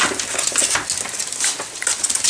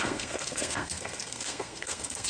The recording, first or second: first